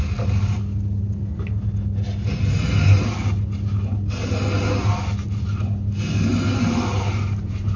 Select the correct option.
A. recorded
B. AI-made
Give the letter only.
A